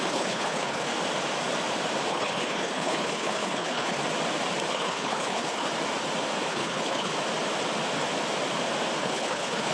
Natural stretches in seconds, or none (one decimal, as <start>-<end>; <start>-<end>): 0.9-2.1; 4.0-4.7; 5.7-6.5; 7.1-9.0

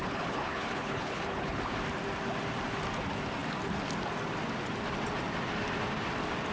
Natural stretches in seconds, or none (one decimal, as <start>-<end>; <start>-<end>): 1.6-6.5